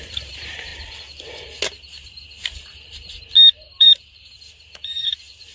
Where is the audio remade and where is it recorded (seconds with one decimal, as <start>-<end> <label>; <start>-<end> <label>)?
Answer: 0.0-0.7 remade; 0.7-3.8 recorded; 3.8-5.5 remade